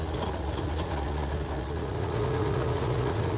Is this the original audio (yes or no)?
no